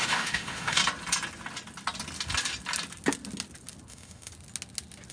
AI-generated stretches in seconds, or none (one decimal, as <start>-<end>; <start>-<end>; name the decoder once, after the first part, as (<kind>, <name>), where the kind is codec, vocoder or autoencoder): 0.0-0.8 (autoencoder, DAC-VAE); 3.9-4.3